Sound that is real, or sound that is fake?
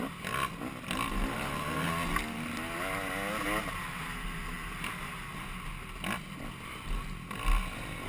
real